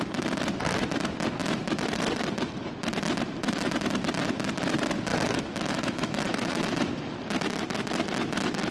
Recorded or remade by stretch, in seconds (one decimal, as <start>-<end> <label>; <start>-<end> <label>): 0.0-5.1 recorded; 5.1-7.1 remade; 7.1-8.7 recorded